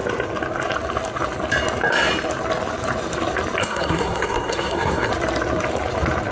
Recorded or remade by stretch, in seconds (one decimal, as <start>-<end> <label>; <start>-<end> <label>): 0.0-3.6 recorded; 3.6-5.1 remade; 5.1-6.3 recorded

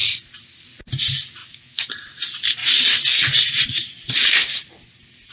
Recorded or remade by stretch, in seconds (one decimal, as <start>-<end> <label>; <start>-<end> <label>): 0.0-1.4 recorded; 1.4-1.9 remade; 1.9-5.3 recorded

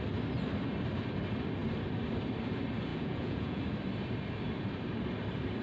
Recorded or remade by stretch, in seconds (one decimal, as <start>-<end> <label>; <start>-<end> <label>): 0.0-2.9 recorded; 2.9-3.6 remade; 3.6-5.6 recorded

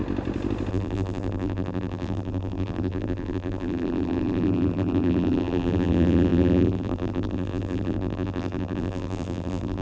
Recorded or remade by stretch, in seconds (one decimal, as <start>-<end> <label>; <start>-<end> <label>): 0.0-0.7 recorded; 0.7-9.8 remade

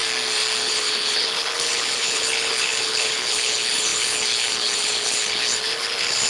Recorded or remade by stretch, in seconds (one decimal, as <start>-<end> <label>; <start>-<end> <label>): 0.0-0.6 recorded; 0.6-6.3 remade

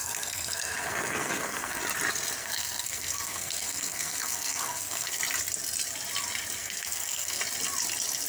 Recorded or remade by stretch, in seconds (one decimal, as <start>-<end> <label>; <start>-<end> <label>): 0.0-1.8 remade; 1.8-2.4 recorded; 2.4-5.2 remade; 5.2-6.6 recorded; 6.6-7.4 remade; 7.4-8.3 recorded

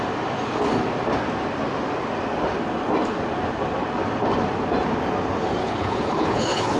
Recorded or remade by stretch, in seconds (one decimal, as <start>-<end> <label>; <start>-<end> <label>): 0.0-5.6 recorded; 5.6-6.8 remade